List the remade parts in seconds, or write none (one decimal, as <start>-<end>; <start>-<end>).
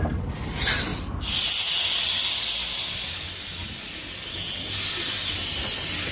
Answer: none